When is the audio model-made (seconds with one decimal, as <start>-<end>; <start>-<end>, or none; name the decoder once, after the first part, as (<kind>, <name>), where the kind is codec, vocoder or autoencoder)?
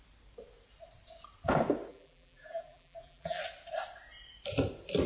1.9-3.4 (vocoder, BigVGAN v2)